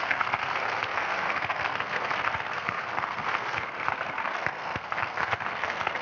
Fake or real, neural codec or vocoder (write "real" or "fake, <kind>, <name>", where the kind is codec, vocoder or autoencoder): fake, codec, SNAC